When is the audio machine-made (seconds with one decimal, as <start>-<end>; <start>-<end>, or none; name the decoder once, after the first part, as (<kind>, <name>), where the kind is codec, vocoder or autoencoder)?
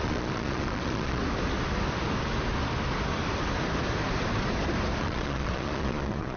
0.0-1.2 (vocoder, Vocos); 5.0-6.4